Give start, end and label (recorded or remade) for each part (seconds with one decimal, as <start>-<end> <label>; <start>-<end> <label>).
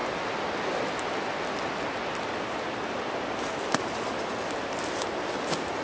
0.0-5.8 recorded